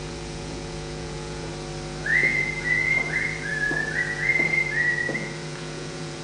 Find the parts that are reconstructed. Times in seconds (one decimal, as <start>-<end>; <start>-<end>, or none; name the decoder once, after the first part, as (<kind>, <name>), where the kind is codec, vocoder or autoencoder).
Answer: 0.0-1.5 (vocoder, Vocos); 2.0-6.2